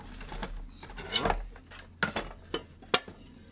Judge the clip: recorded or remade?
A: recorded